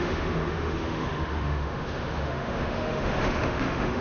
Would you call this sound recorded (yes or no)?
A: no